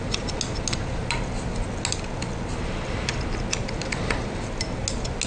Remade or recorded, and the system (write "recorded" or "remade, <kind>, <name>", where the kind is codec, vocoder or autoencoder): recorded